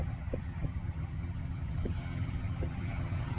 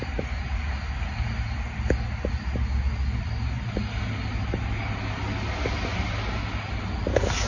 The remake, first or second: first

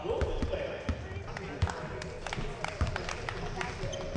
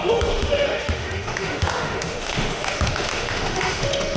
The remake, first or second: second